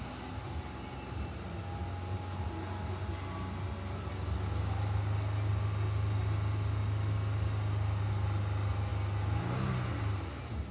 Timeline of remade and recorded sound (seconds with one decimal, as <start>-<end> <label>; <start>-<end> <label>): 0.0-10.7 recorded